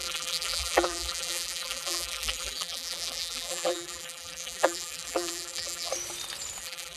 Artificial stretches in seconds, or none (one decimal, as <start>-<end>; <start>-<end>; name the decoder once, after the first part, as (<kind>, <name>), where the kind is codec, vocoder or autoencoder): 0.0-5.9 (vocoder, BigVGAN v2); 6.6-7.0